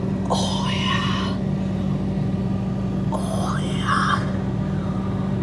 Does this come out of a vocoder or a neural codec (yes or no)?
no